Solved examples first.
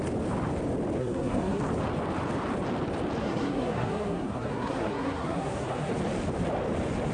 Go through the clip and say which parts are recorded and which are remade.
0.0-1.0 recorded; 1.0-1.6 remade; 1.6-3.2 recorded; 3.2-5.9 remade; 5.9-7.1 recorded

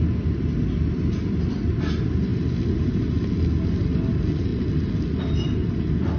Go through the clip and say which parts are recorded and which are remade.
0.0-6.2 recorded

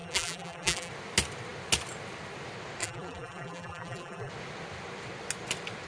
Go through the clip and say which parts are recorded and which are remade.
0.0-0.9 remade; 0.9-2.8 recorded; 2.8-4.3 remade; 4.3-5.9 recorded

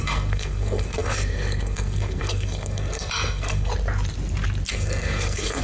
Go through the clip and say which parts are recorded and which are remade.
0.0-3.7 remade; 3.7-4.7 recorded; 4.7-5.6 remade

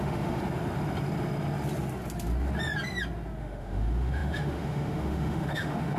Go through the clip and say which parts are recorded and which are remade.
0.0-0.4 remade; 0.4-3.4 recorded; 3.4-6.0 remade

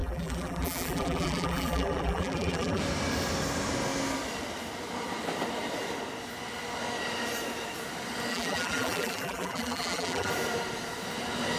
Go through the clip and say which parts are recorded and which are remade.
0.0-2.8 remade; 2.8-8.3 recorded; 8.3-10.3 remade; 10.3-11.6 recorded